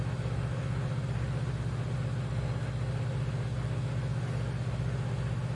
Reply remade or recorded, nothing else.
recorded